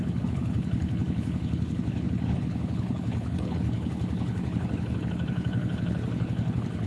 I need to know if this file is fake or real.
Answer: fake